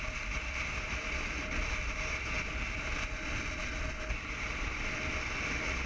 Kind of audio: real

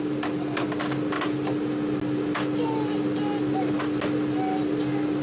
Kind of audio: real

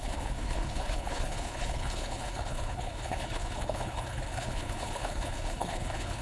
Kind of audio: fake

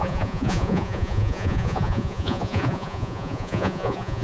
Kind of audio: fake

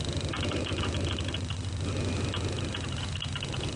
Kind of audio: real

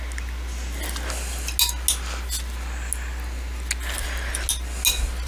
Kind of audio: real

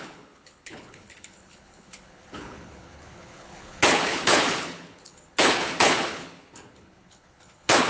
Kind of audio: fake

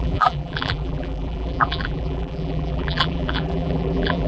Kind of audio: fake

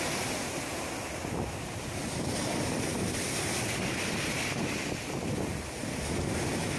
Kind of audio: real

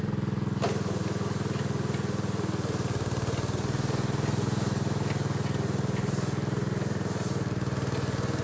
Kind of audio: real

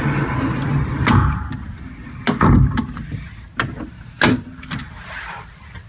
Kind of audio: real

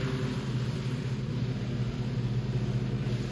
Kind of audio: real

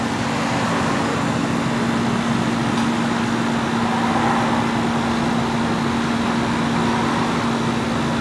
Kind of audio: real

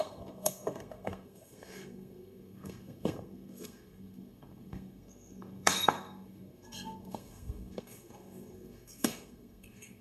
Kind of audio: fake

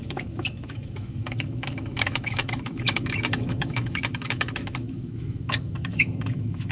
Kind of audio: fake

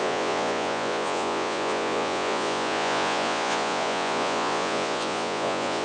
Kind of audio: fake